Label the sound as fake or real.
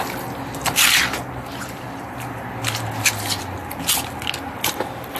real